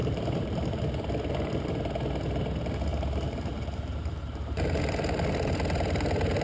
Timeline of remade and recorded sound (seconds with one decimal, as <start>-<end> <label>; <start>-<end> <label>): 0.0-0.8 remade; 0.8-2.9 recorded; 2.9-4.8 remade; 4.8-6.4 recorded